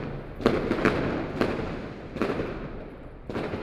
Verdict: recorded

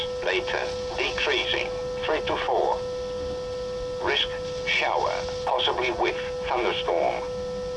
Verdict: recorded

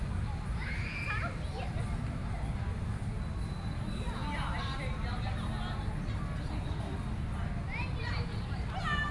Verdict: recorded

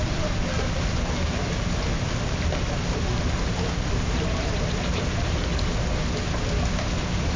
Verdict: recorded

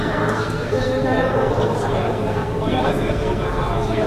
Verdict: remade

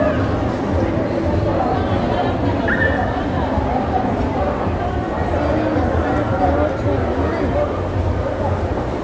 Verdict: recorded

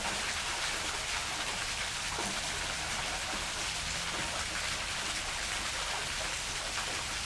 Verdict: recorded